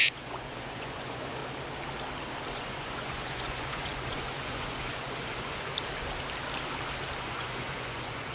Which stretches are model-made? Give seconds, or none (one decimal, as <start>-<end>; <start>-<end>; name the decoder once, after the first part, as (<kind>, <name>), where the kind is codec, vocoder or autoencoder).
0.0-1.4 (vocoder, Vocos); 2.5-5.7; 7.2-8.3